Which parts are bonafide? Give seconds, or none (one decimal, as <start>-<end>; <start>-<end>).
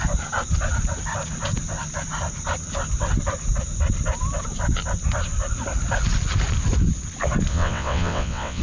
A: 0.0-7.5